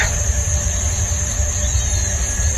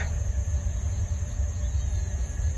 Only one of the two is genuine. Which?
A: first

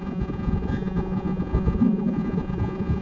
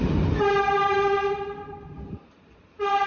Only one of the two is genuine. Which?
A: second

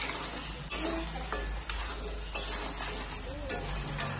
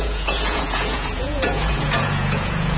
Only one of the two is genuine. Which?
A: first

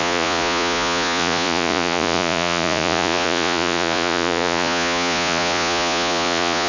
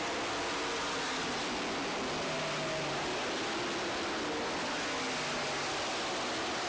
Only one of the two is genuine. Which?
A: second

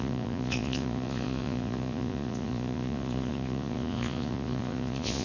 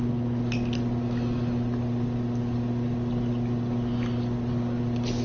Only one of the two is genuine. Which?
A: second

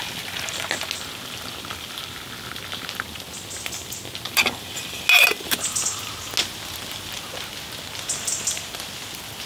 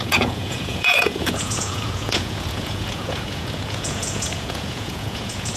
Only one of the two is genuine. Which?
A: first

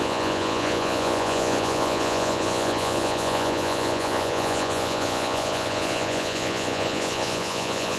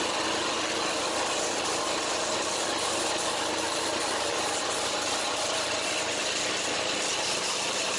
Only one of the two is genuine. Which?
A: second